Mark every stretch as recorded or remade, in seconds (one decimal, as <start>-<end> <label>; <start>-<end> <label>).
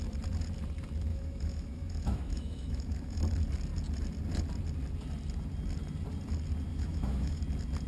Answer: 0.0-1.1 recorded; 1.1-3.2 remade; 3.2-6.7 recorded; 6.7-7.4 remade; 7.4-7.9 recorded